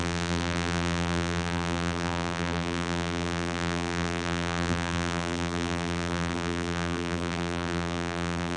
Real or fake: fake